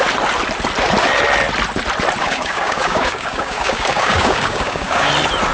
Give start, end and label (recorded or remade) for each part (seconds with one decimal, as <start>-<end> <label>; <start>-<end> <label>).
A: 0.0-2.2 recorded; 2.2-5.1 remade; 5.1-5.5 recorded